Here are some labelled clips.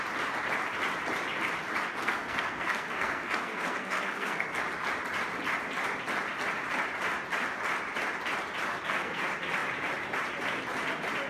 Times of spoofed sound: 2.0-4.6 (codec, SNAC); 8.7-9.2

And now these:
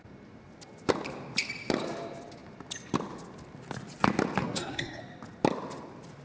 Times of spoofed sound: 4.4-5.0 (codec, SNAC)

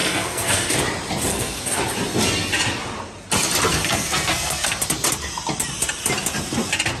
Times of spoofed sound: 0.0-0.8 (codec, SNAC); 1.3-1.8; 3.7-4.8

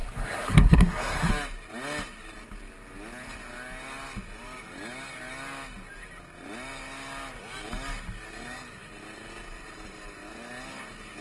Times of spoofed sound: 0.0-1.3 (codec, SNAC)

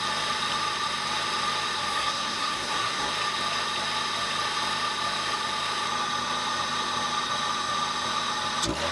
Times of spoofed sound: 1.9-3.1 (codec, SNAC)

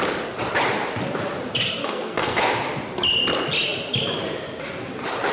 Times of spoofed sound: 1.8-2.5 (codec, SNAC)

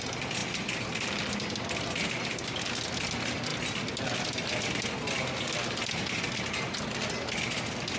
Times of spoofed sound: none